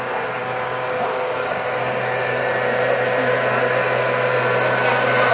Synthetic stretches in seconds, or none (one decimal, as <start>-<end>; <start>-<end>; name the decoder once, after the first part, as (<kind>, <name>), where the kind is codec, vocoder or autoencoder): 0.0-2.4 (codec, DAC)